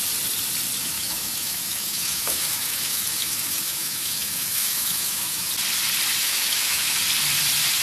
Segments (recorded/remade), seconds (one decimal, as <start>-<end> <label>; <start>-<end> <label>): 0.0-0.8 recorded; 0.8-5.5 remade; 5.5-6.2 recorded; 6.2-7.0 remade; 7.0-7.8 recorded